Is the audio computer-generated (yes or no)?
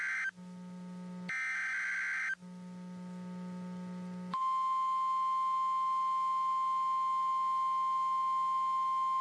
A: no